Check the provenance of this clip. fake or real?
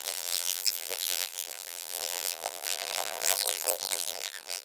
fake